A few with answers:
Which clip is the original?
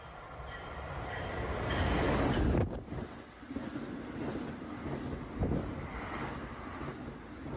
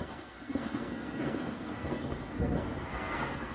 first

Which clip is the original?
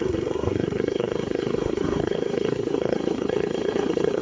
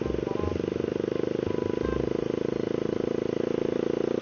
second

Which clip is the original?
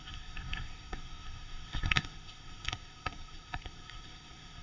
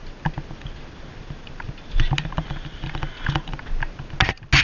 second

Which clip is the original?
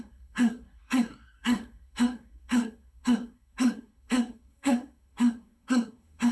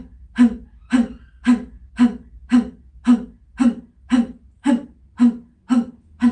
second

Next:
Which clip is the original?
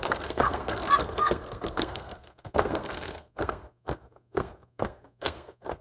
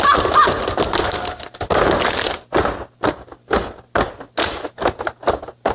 second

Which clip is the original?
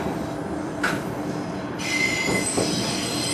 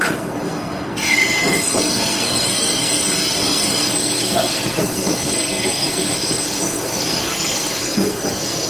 first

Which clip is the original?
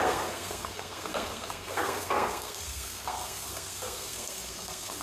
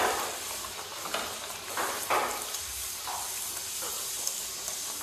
second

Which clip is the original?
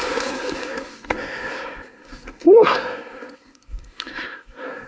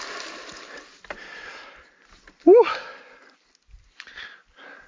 second